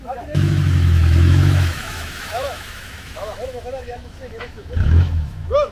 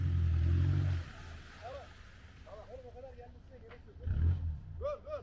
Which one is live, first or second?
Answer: second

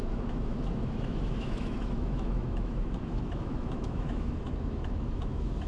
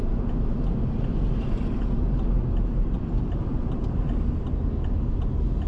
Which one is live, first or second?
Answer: second